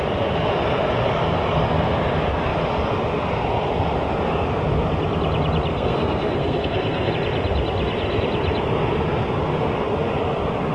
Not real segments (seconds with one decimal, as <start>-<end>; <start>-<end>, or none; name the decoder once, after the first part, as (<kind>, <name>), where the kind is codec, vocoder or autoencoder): 5.7-7.1 (codec, SNAC)